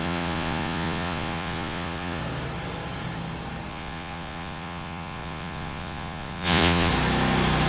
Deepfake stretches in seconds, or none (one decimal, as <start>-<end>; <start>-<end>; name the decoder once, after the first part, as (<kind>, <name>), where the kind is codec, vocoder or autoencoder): 0.0-2.2 (vocoder, Vocos); 3.7-6.9